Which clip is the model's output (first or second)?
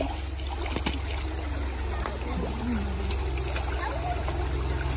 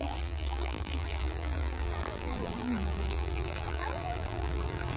second